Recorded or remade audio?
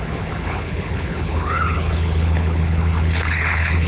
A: remade